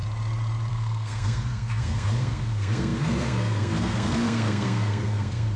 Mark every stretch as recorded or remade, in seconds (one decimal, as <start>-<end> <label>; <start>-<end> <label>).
0.0-0.7 recorded; 0.7-5.6 remade